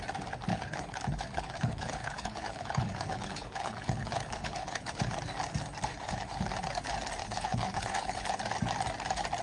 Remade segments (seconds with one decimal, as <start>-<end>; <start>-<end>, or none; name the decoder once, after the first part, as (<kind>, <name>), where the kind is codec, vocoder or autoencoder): 0.5-5.2 (codec, HILCodec); 5.9-6.5; 7.2-8.4